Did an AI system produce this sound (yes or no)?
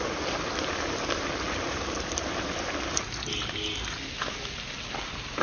no